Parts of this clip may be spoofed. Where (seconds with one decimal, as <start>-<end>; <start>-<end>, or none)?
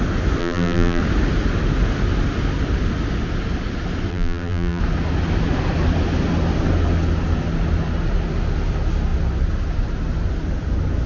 0.4-1.0; 4.1-4.8